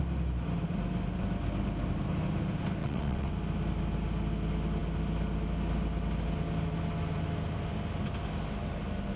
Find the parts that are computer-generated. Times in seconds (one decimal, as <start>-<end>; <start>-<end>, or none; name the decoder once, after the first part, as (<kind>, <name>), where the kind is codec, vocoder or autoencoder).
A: 2.8-3.3 (vocoder, WaveNeXt)